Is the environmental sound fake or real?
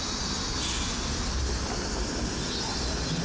real